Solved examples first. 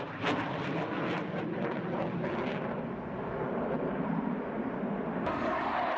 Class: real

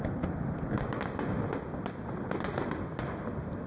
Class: real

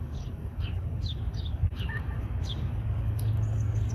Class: fake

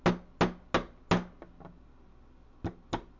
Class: real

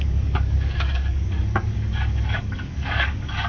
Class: fake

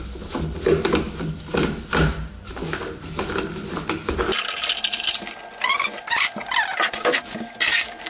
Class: real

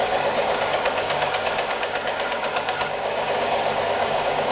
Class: fake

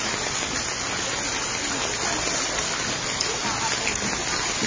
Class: real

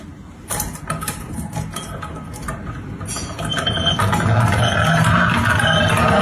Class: real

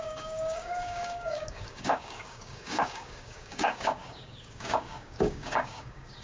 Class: fake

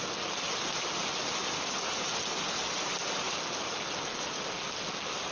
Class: real